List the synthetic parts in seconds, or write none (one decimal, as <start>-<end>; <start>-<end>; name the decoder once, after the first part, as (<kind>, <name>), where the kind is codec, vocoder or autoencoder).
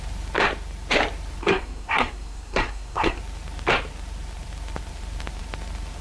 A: 1.4-3.2 (codec, SNAC)